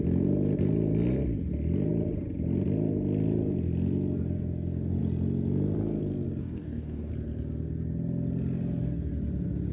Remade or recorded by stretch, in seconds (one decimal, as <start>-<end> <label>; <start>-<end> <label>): 0.0-6.4 recorded; 6.4-7.1 remade; 7.1-9.7 recorded